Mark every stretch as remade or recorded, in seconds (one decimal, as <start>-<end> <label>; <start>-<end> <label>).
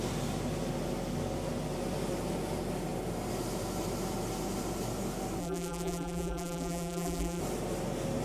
0.0-5.4 recorded; 5.4-7.4 remade; 7.4-8.2 recorded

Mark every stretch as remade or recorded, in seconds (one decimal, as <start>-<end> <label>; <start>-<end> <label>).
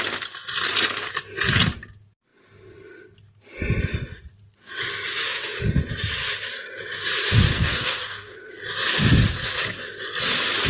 0.0-7.5 recorded; 7.5-8.5 remade; 8.5-10.7 recorded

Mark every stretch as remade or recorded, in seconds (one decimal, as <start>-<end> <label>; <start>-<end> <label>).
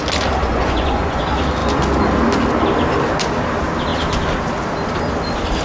0.0-0.4 recorded; 0.4-1.2 remade; 1.2-5.6 recorded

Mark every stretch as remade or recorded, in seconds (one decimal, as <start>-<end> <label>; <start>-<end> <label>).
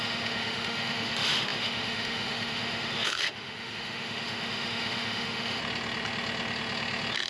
0.0-5.6 remade; 5.6-7.3 recorded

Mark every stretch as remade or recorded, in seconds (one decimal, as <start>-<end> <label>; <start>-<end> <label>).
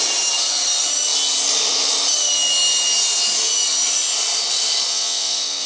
0.0-4.9 recorded; 4.9-5.7 remade